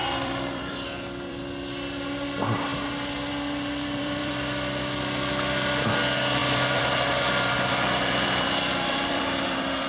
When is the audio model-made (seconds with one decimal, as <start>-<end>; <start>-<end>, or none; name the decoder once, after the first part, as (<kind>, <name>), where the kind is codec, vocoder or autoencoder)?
0.0-1.4 (vocoder, BigVGAN v2); 2.7-6.0; 6.4-9.9